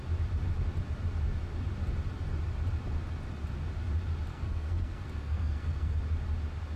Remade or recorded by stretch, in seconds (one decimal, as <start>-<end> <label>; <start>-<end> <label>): 0.0-4.3 recorded; 4.3-6.0 remade; 6.0-6.8 recorded